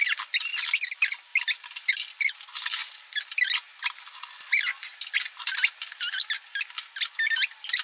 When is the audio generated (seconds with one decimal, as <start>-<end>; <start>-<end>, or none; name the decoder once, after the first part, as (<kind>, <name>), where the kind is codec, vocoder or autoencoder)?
none